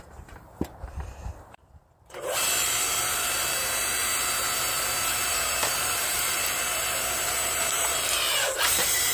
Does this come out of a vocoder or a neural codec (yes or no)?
yes